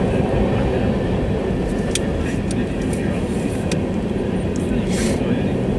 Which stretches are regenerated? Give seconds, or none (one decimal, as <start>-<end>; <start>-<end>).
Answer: none